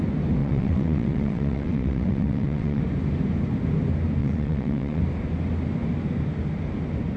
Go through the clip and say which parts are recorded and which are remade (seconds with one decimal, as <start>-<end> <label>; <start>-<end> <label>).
0.0-0.4 recorded; 0.4-2.8 remade; 2.8-4.2 recorded; 4.2-5.0 remade; 5.0-7.2 recorded